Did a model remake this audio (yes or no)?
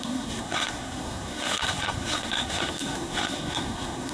yes